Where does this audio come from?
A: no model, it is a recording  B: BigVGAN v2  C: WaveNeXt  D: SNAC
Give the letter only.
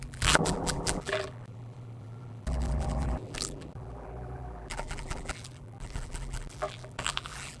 B